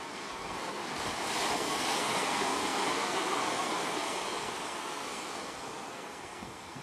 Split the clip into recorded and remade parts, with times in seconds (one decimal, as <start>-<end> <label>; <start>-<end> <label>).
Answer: 0.0-0.8 remade; 0.8-1.5 recorded; 1.5-6.8 remade